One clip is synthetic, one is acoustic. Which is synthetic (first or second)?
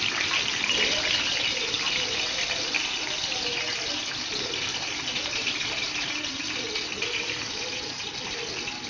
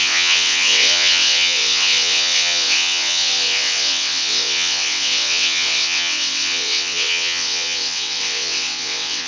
second